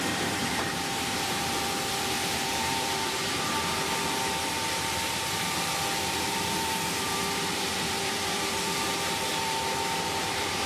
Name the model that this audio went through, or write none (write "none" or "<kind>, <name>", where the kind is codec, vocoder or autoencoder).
vocoder, BigVGAN v2